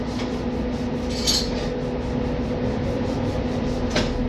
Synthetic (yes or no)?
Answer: no